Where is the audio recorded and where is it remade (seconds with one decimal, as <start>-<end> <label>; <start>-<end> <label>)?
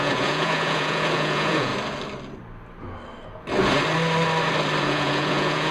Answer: 0.0-1.7 remade; 1.7-4.8 recorded; 4.8-5.7 remade